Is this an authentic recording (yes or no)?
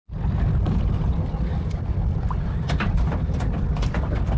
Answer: yes